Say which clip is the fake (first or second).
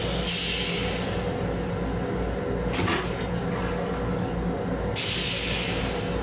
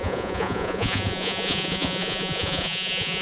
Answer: second